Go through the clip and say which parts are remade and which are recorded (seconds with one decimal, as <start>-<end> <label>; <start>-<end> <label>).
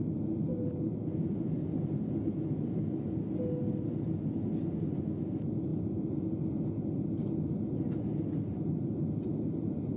0.0-10.0 recorded